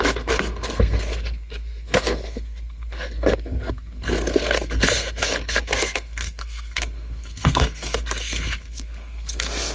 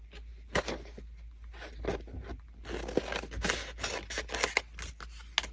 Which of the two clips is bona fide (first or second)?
second